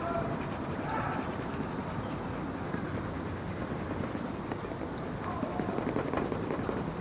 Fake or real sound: real